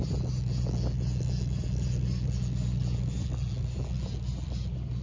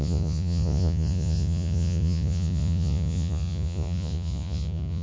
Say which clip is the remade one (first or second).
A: second